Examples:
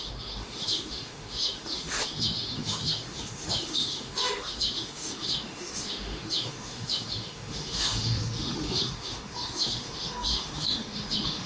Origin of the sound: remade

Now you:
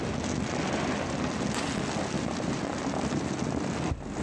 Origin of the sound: recorded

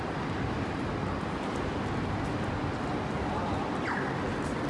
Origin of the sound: recorded